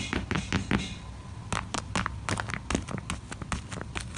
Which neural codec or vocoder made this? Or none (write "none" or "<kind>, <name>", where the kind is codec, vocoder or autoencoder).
none